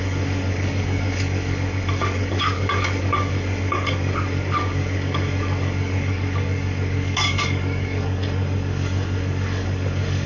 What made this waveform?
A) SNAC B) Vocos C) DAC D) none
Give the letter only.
C